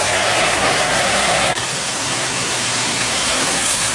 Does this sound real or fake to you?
fake